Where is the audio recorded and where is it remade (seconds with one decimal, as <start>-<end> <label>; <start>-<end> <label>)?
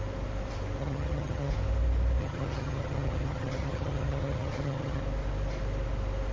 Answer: 0.0-0.8 recorded; 0.8-1.5 remade; 1.5-2.2 recorded; 2.2-5.0 remade; 5.0-6.3 recorded